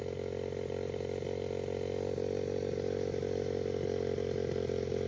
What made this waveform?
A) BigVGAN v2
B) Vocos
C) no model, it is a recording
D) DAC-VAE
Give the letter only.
C